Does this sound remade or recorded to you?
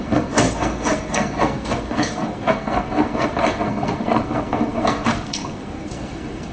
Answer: remade